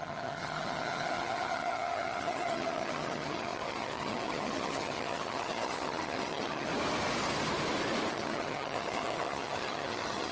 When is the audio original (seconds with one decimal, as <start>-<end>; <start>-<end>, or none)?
6.7-8.1